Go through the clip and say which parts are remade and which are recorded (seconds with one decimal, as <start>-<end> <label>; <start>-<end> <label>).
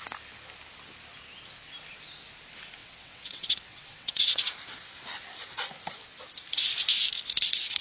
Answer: 0.0-2.8 recorded; 2.8-4.5 remade; 4.5-7.8 recorded